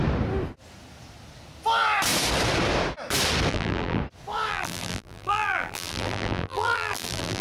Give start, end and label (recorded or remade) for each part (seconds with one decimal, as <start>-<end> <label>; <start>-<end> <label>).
0.0-3.5 recorded; 3.5-4.0 remade; 4.0-4.5 recorded; 4.5-7.4 remade